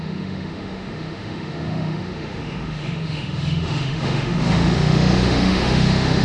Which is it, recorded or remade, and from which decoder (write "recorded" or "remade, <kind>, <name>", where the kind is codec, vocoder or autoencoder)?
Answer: remade, autoencoder, DAC-VAE